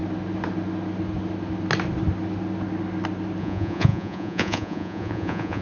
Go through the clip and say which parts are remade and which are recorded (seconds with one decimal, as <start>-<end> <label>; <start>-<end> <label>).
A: 0.0-3.4 recorded; 3.4-5.6 remade